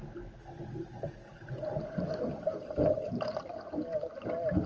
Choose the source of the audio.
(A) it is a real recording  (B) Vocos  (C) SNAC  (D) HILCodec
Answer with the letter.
A